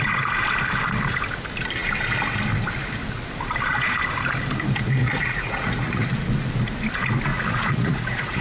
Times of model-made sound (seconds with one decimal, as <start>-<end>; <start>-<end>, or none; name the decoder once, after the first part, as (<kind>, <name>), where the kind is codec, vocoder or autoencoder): 5.0-6.3 (vocoder, Vocos); 7.3-8.4